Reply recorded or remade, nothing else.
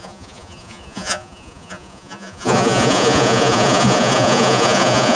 remade